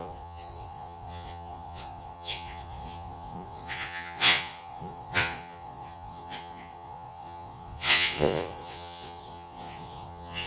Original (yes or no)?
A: no